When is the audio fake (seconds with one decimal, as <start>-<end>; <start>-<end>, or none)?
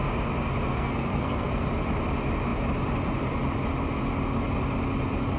0.7-1.7